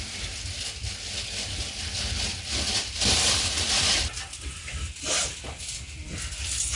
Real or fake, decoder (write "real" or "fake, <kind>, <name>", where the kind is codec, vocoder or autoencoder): real